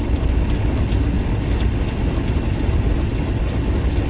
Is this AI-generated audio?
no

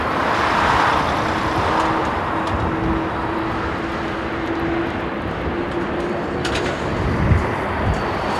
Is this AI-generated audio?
no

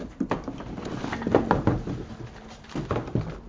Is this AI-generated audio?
no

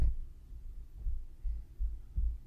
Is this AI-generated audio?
no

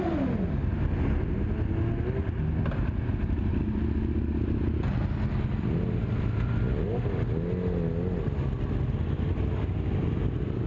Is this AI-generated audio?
no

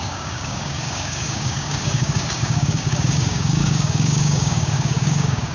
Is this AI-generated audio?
yes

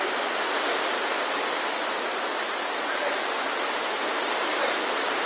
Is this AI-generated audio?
no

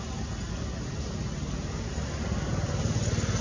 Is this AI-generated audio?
no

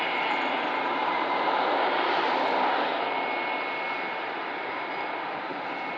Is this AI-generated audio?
no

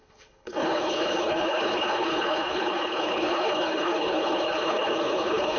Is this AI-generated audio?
yes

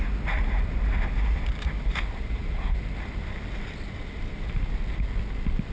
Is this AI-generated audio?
no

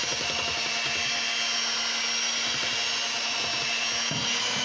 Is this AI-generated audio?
no